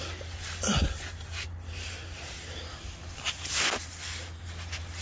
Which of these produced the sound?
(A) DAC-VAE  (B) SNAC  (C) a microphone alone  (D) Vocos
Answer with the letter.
C